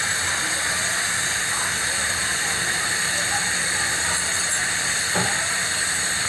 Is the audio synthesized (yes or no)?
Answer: no